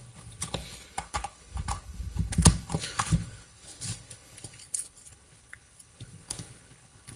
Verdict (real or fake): fake